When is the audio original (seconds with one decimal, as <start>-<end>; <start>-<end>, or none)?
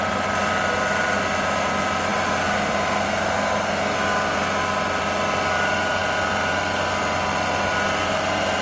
0.0-8.6